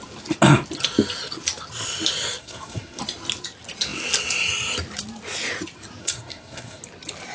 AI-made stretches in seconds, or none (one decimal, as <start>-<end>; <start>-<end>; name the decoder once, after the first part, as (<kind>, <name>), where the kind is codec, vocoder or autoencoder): 2.4-3.0 (codec, SNAC); 6.0-6.8